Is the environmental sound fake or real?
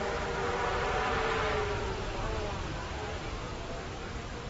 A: real